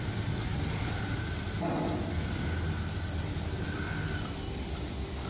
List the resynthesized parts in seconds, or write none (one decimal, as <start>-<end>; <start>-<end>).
none